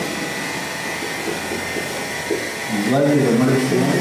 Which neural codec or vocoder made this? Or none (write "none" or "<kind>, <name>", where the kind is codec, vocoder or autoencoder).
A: none